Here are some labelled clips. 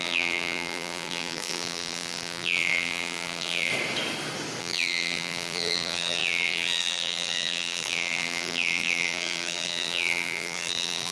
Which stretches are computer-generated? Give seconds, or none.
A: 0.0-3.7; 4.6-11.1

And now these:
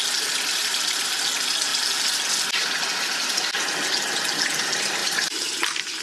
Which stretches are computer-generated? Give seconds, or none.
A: 0.6-1.1; 5.0-6.0

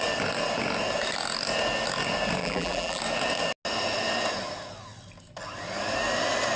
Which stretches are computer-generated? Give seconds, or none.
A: 2.4-3.0